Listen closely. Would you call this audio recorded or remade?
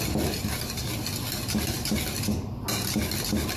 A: recorded